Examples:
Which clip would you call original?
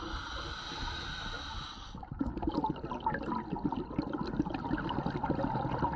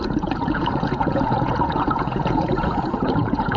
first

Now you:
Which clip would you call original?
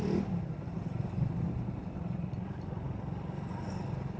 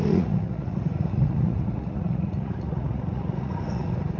first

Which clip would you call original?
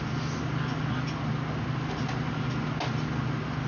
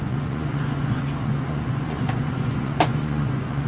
first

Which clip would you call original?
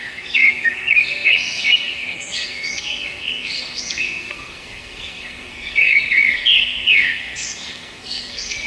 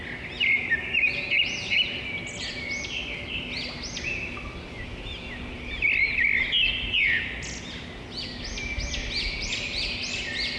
second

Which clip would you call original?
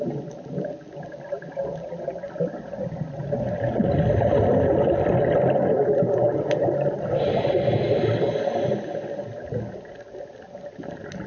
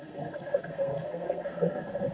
first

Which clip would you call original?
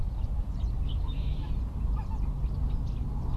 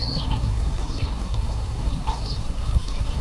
first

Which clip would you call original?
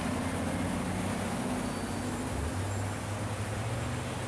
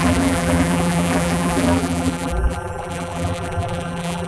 first